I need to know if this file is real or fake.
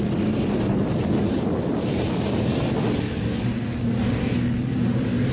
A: real